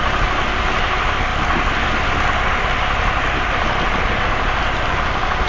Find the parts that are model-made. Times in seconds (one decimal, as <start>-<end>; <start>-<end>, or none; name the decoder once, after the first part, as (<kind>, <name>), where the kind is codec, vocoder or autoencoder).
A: none